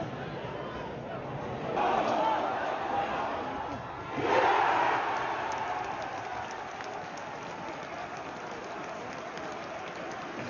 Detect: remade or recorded recorded